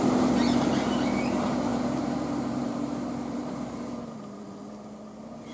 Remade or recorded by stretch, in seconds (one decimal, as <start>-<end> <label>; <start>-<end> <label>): 0.0-1.7 recorded; 1.7-4.7 remade; 4.7-5.5 recorded